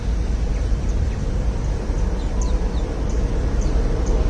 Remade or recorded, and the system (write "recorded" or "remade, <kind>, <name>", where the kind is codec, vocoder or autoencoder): recorded